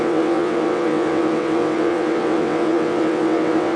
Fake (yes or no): yes